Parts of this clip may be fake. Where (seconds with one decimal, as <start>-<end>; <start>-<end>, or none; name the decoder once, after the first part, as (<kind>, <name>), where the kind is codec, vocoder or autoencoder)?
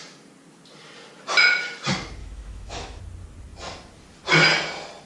2.2-3.0 (autoencoder, DAC-VAE)